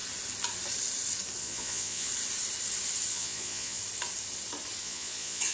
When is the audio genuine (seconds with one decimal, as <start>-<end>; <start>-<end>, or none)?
0.0-1.4; 2.1-3.1; 3.8-4.8